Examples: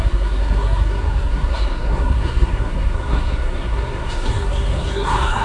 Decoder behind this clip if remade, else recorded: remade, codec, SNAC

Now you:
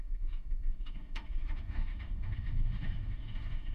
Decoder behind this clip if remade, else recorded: remade, autoencoder, DAC-VAE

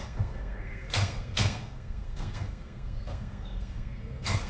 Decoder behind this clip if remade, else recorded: remade, codec, SNAC